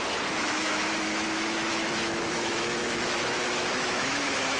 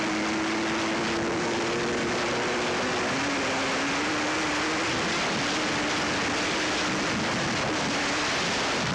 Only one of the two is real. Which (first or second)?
second